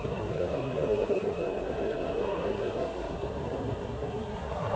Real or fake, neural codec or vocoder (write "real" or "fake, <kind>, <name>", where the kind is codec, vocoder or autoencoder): fake, codec, SNAC